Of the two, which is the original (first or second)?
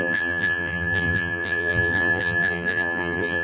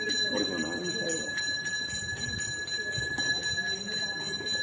second